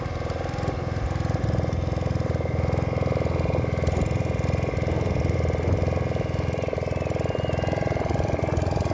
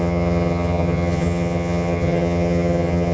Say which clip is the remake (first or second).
second